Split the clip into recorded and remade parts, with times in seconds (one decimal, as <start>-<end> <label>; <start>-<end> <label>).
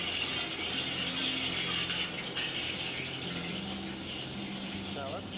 0.0-5.4 recorded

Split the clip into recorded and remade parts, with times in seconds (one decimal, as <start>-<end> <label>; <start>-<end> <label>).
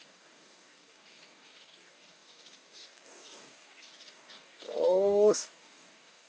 0.0-6.3 remade